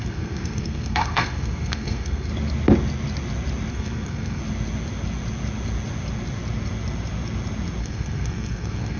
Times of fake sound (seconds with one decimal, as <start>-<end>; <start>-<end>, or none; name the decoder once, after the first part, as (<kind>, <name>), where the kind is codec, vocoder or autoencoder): 0.0-2.3 (codec, SNAC); 3.7-4.4; 7.8-9.0